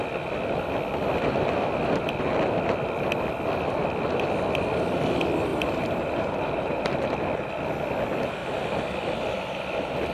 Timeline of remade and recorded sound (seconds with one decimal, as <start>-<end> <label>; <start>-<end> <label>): 0.0-5.5 recorded; 5.5-6.8 remade; 6.8-10.1 recorded